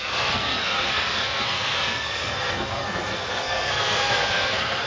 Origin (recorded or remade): remade